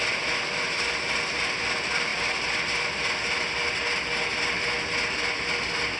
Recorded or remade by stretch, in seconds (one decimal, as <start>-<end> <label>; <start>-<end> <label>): 0.0-6.0 recorded